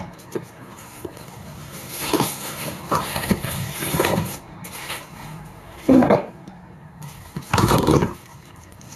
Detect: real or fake fake